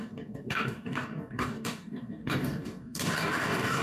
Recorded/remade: remade